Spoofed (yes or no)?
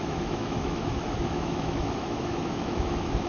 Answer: yes